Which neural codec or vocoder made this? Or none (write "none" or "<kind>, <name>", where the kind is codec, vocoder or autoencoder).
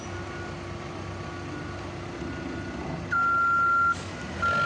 none